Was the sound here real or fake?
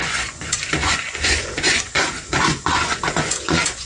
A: fake